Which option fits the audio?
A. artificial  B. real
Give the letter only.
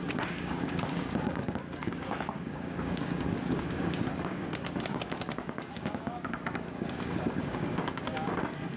A